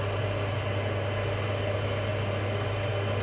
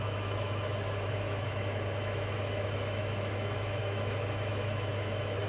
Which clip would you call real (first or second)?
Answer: first